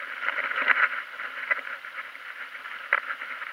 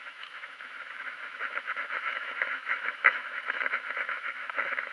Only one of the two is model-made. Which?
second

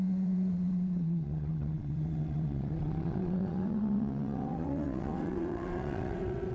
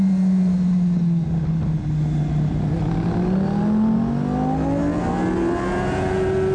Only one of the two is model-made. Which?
first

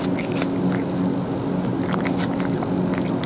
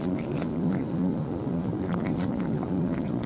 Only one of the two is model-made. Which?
second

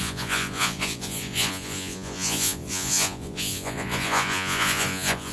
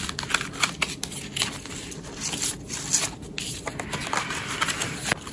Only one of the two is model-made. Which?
first